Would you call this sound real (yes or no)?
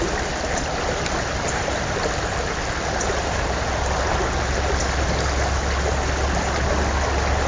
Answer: yes